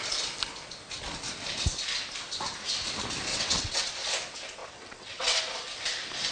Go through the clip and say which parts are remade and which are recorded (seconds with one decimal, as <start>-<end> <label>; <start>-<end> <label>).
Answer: 0.0-3.3 recorded; 3.3-3.9 remade; 3.9-4.6 recorded; 4.6-5.4 remade; 5.4-6.3 recorded

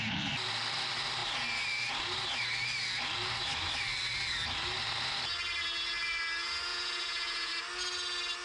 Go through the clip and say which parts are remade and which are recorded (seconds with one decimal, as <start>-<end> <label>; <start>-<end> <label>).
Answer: 0.0-6.7 recorded; 6.7-7.5 remade; 7.5-8.4 recorded